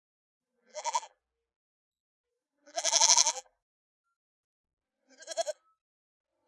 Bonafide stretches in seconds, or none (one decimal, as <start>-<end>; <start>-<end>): 1.2-2.3; 4.6-6.5